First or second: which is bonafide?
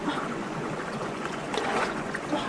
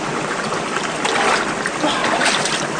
second